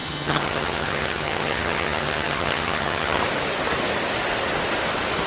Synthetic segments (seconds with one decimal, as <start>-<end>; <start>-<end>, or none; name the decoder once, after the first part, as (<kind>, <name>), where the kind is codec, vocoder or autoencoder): 0.0-3.2 (vocoder, HiFi-GAN)